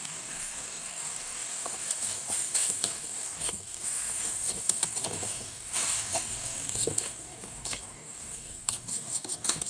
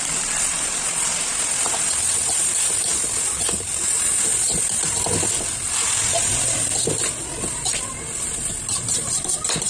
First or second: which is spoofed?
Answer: first